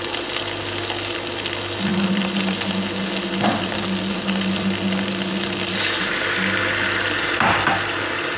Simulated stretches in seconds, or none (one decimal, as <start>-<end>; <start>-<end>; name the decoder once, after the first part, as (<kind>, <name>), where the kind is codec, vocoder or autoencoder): none